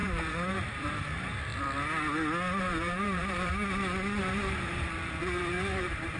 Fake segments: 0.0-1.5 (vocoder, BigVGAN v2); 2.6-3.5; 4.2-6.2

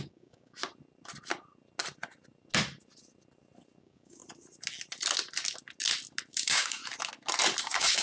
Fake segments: 0.0-0.6 (codec, DAC); 3.8-4.2; 6.3-6.8; 7.6-8.0

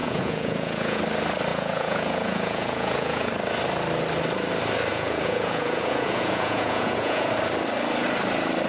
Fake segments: 0.0-1.0 (vocoder, Vocos); 1.5-3.3; 4.9-7.3

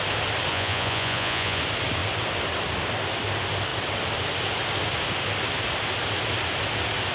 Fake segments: 0.5-1.6 (vocoder, Vocos)

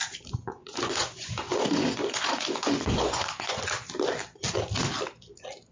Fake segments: 0.4-3.6 (vocoder, Vocos)

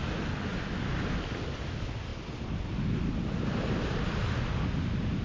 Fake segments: none